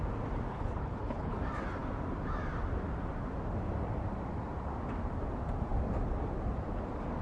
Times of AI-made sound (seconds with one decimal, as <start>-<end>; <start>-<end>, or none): 0.5-1.4